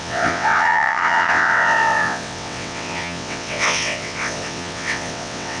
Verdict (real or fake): fake